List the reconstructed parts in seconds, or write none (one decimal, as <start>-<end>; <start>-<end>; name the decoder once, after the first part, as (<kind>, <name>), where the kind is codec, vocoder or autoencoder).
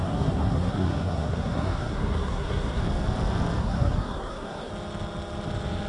0.0-2.8 (codec, SNAC); 3.6-4.7